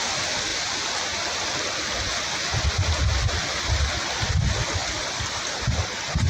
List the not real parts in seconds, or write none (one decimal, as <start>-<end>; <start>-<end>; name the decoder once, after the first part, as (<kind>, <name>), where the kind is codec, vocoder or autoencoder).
none